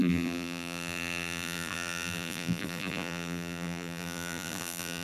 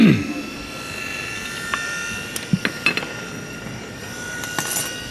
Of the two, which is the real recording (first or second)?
second